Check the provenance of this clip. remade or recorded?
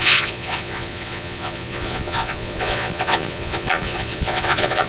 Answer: remade